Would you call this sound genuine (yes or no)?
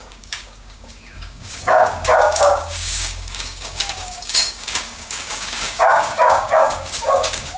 no